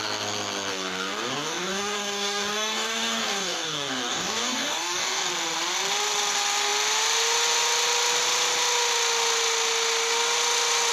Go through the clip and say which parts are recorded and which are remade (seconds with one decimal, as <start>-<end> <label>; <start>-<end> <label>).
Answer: 0.0-0.7 recorded; 0.7-5.3 remade; 5.3-10.9 recorded